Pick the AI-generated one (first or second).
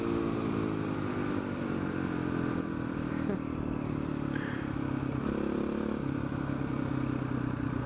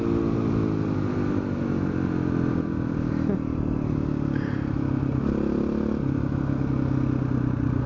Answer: first